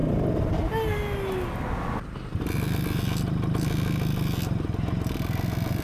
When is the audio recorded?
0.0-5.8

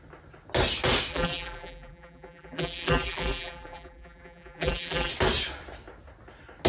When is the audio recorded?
0.0-1.1; 5.1-6.7

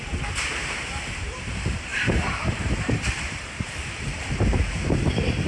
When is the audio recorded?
none

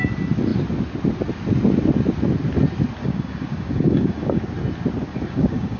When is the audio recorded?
0.0-3.0; 4.4-5.1

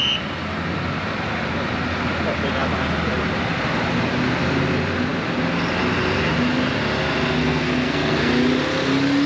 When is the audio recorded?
0.0-7.4; 8.3-9.3

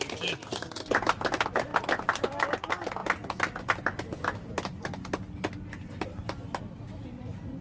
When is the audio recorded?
0.0-7.6

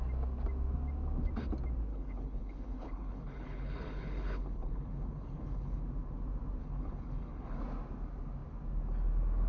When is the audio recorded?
0.0-1.9; 5.8-6.6; 7.6-9.5